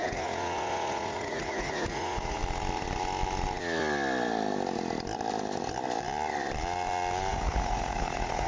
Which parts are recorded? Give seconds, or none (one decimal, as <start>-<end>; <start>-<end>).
2.4-7.3